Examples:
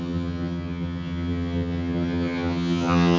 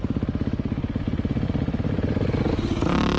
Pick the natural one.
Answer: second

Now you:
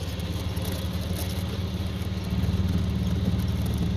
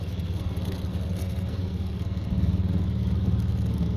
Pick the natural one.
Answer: first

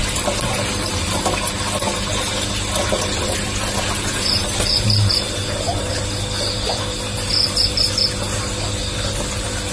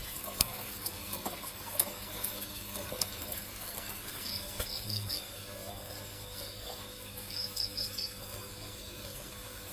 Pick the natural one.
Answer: first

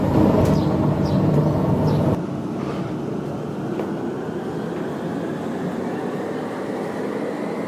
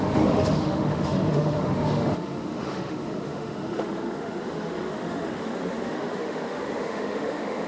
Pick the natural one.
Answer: first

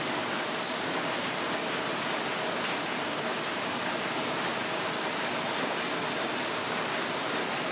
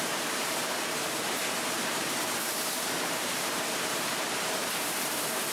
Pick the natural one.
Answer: first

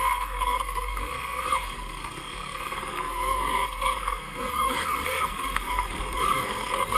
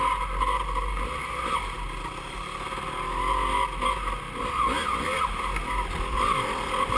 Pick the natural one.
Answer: second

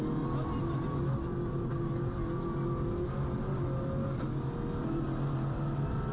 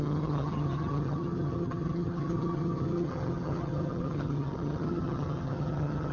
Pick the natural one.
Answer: first